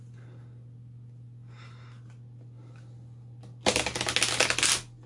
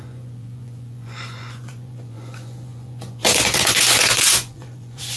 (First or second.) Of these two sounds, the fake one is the second